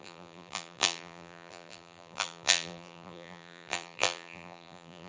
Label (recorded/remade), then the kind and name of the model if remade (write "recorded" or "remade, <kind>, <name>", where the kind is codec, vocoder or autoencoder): remade, vocoder, BigVGAN v2